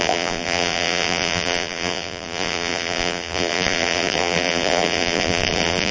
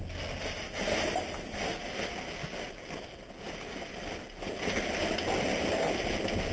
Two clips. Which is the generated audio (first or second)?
first